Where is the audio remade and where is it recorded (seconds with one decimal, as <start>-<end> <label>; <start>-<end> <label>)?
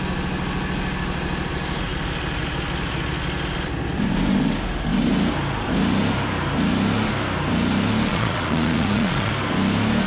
0.0-8.1 recorded; 8.1-9.3 remade; 9.3-10.1 recorded